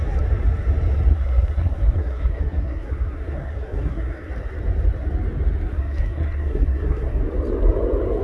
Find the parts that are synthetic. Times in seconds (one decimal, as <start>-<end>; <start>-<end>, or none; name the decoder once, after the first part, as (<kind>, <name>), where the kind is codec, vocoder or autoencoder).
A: 1.1-4.3 (codec, SNAC); 5.7-7.2